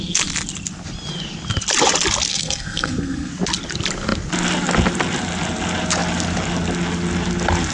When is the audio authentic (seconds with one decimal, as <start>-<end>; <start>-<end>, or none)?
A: 0.0-2.3; 3.3-7.7